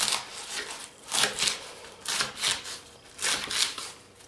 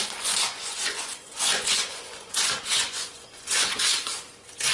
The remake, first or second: second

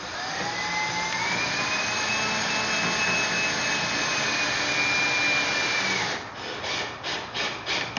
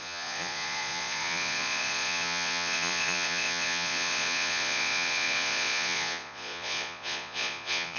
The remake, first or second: second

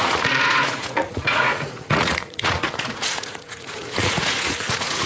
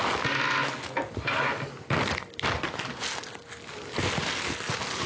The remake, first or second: first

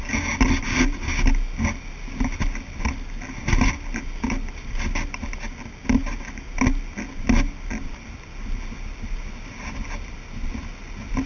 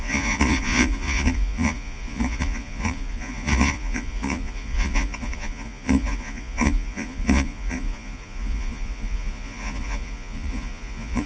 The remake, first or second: second